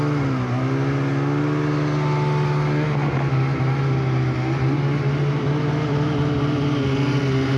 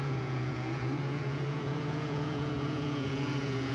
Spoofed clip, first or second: second